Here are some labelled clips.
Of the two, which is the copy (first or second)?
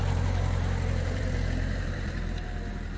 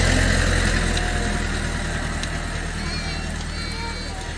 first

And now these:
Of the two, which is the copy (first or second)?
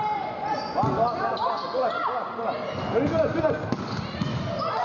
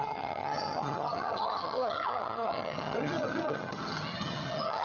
second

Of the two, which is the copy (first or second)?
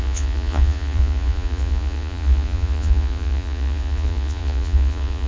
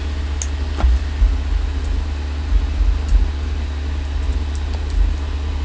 first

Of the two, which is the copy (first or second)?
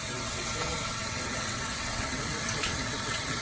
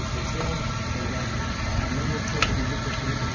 first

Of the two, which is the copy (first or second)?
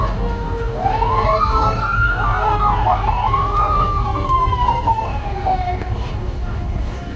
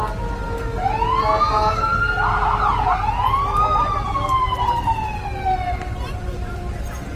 first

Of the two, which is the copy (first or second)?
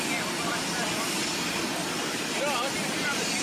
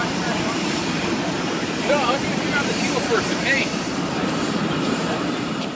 second